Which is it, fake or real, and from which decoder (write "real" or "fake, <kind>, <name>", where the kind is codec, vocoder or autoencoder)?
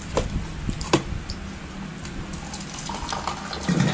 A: real